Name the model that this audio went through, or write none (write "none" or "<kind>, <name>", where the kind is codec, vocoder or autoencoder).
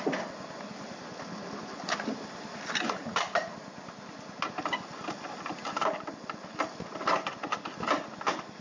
none